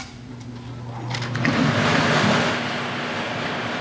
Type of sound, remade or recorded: recorded